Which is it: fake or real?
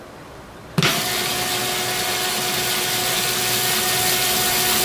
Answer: real